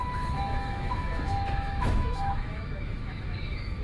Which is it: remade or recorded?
remade